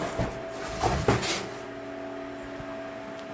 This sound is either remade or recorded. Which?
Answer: recorded